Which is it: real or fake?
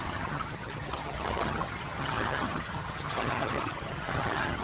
fake